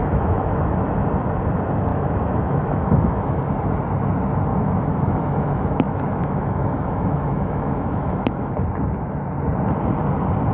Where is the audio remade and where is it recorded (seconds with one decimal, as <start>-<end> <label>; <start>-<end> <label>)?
0.0-0.6 remade; 0.6-1.9 recorded; 1.9-3.4 remade; 3.4-4.5 recorded; 4.5-8.5 remade; 8.5-10.5 recorded